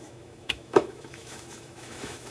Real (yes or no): no